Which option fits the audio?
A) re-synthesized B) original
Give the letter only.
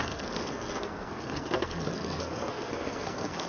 A